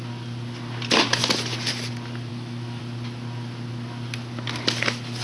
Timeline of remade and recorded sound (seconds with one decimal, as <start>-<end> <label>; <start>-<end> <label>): 0.0-2.3 recorded; 2.3-2.8 remade; 2.8-5.2 recorded